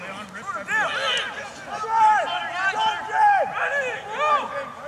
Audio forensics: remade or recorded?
recorded